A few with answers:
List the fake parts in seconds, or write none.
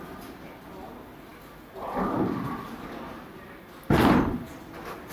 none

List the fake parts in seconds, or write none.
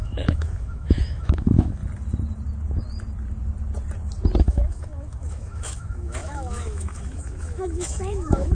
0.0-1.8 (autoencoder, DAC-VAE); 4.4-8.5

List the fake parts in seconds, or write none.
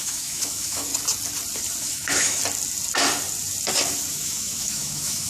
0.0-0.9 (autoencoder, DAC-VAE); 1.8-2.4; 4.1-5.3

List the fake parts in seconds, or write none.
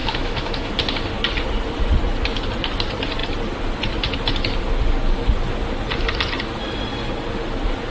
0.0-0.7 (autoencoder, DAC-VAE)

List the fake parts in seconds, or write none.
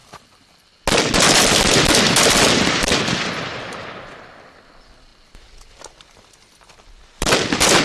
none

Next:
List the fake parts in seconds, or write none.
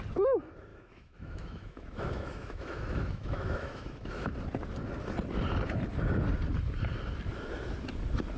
0.7-4.3 (autoencoder, DAC-VAE)